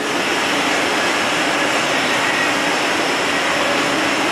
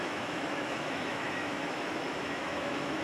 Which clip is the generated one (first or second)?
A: second